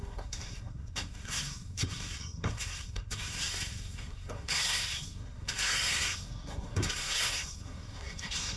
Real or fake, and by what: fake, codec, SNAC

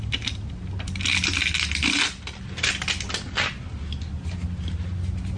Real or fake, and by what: real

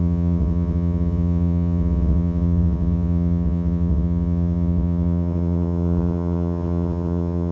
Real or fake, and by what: fake, vocoder, WaveNeXt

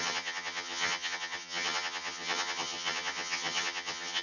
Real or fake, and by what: fake, vocoder, HiFi-GAN